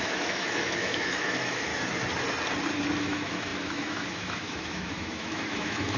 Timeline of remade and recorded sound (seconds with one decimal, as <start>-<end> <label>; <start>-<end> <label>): 0.0-1.7 remade; 1.7-3.0 recorded; 3.0-6.0 remade